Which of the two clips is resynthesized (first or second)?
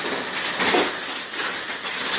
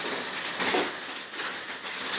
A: first